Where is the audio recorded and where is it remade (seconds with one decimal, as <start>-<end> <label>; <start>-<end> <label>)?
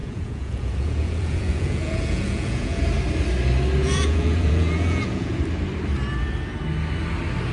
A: 0.0-2.8 remade; 2.8-3.8 recorded; 3.8-5.4 remade; 5.4-7.5 recorded